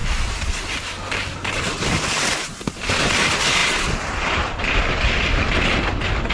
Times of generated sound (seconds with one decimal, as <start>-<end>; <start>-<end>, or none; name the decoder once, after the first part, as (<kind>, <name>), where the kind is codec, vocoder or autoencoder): 0.0-1.7 (vocoder, BigVGAN v2)

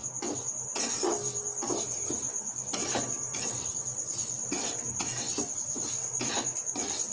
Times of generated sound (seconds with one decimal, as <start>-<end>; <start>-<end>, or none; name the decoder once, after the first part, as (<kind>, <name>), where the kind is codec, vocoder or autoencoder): 1.2-5.5 (vocoder, BigVGAN v2)